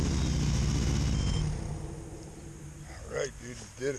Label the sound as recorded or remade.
recorded